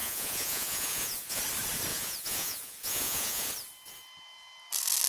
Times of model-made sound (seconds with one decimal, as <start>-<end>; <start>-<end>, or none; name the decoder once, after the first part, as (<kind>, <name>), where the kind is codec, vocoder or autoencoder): 0.0-1.4 (vocoder, Vocos); 1.9-3.5